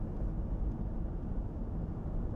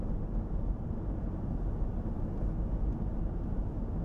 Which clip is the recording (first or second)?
second